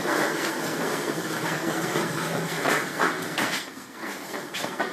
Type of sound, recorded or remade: remade